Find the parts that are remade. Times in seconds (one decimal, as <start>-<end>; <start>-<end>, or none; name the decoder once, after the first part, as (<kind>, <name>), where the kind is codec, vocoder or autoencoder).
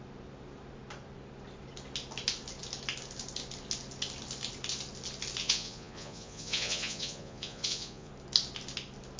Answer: 5.4-8.1 (vocoder, Vocos)